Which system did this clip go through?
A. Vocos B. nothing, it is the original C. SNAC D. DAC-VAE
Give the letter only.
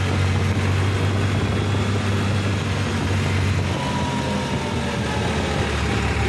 B